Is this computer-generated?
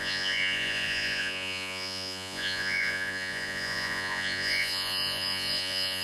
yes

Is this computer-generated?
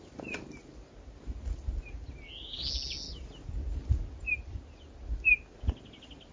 no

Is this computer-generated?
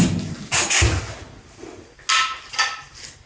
no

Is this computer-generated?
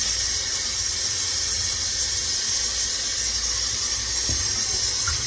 no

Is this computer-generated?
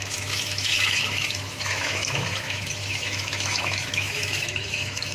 yes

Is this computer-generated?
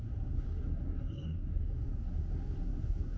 yes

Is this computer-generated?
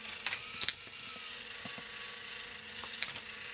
no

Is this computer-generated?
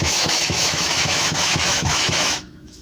yes